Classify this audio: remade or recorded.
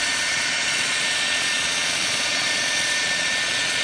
remade